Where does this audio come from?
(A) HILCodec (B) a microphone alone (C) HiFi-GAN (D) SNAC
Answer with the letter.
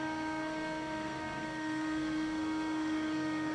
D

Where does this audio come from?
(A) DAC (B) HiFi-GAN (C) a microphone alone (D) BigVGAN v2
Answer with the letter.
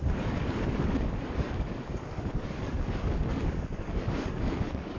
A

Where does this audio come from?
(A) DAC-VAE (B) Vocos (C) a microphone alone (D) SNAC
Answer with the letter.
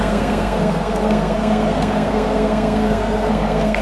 D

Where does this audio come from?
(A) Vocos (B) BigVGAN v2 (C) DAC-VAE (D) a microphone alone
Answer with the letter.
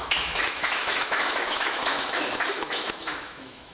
C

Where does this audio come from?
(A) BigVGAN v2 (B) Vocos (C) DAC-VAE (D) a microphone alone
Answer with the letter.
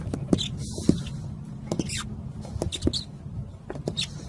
D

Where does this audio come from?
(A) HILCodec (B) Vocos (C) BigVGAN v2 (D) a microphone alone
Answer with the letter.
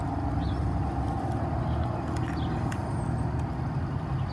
D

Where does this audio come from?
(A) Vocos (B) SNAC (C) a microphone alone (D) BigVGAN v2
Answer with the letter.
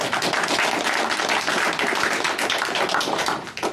C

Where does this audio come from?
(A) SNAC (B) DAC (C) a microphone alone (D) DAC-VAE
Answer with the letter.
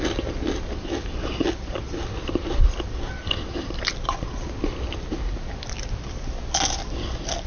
C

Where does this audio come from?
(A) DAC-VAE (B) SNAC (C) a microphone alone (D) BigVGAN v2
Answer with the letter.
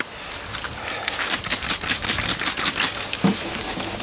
C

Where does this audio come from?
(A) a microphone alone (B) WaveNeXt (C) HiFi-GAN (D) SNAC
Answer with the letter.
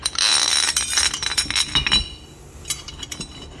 A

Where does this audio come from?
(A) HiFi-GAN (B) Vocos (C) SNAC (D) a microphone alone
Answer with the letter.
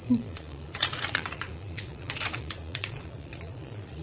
B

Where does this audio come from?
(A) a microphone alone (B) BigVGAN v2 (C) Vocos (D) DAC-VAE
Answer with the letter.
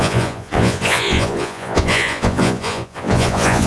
C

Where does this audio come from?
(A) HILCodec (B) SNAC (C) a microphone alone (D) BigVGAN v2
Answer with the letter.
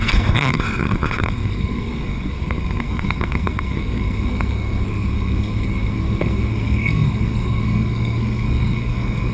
B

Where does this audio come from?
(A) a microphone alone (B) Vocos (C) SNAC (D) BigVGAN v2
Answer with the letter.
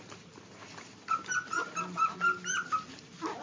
A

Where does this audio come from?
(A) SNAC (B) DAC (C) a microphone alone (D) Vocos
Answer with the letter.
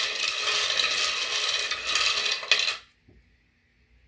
C